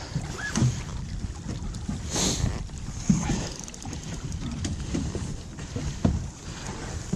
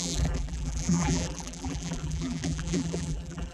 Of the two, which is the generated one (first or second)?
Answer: second